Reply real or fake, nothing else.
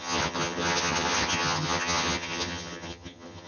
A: fake